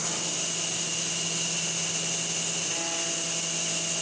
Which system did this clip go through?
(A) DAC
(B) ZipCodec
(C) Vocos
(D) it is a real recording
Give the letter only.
D